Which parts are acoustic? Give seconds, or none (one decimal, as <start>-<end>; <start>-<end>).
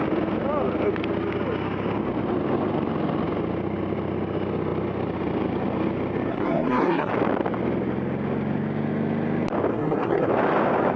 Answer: 0.0-6.3; 7.1-9.7; 10.3-11.0